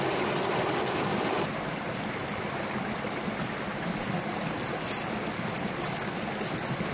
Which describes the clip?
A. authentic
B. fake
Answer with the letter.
A